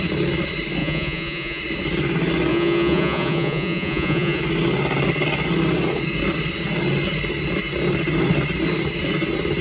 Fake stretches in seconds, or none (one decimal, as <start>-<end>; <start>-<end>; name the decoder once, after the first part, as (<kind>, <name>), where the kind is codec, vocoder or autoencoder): 0.8-1.6 (vocoder, Vocos); 2.5-4.4

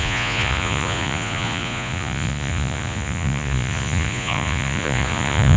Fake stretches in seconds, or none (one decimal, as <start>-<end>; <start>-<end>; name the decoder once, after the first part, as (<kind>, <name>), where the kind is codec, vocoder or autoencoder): 0.0-5.6 (vocoder, Vocos)

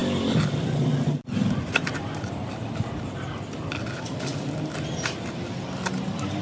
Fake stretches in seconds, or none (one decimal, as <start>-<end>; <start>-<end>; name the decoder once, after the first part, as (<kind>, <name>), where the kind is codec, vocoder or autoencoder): none

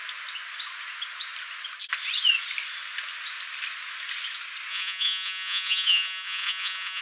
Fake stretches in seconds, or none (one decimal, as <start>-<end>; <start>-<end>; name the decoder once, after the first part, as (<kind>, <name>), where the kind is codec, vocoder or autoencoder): 4.7-7.0 (vocoder, Vocos)